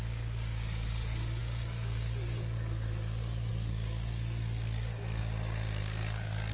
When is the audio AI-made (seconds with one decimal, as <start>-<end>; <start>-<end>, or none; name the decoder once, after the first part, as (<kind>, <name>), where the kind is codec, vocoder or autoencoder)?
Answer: 0.0-5.2 (codec, DAC); 5.8-6.5